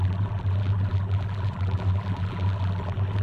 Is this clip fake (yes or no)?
yes